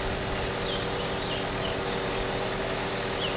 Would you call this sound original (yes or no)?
yes